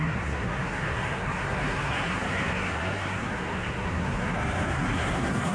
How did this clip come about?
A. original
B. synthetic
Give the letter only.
B